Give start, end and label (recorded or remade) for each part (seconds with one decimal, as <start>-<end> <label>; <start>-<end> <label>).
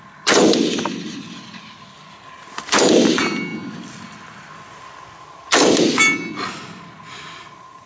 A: 0.0-7.9 recorded